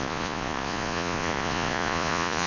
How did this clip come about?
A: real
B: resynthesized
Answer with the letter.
B